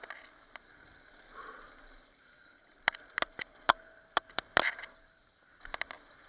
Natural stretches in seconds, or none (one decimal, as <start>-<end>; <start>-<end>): 0.0-6.3